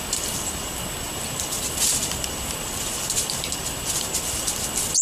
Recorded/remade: recorded